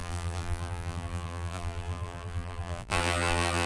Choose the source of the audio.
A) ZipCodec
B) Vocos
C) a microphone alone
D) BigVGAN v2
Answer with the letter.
D